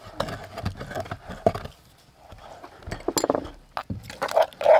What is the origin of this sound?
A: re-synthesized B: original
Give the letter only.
B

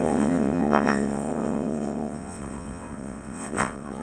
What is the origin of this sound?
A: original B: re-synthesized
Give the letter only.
B